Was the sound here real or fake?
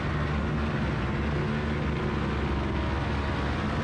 real